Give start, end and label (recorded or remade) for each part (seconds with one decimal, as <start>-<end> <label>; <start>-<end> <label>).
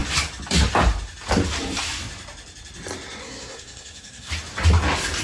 0.0-3.2 recorded; 3.2-4.3 remade; 4.3-5.2 recorded